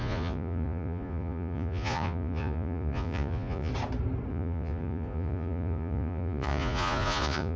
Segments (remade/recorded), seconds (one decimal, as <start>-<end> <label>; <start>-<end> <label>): 0.0-3.7 remade; 3.7-4.3 recorded; 4.3-7.6 remade